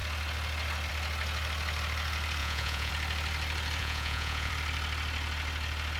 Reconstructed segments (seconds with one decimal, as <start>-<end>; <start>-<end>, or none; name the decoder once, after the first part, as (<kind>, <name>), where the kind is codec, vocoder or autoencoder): 2.4-2.9 (vocoder, Vocos); 3.8-4.5